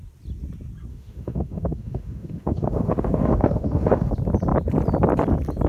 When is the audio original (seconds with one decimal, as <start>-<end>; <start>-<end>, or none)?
0.0-0.9; 4.1-5.7

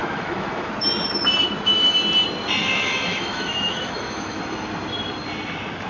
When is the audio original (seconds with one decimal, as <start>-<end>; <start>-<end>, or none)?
0.7-2.6; 4.4-5.9